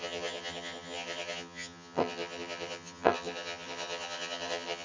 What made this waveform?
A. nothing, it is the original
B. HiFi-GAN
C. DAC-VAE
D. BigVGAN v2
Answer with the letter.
B